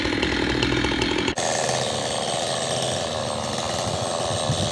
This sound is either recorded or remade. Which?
recorded